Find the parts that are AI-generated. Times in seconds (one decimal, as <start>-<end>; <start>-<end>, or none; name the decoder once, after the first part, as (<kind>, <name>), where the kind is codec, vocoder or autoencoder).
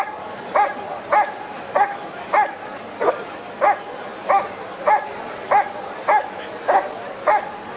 none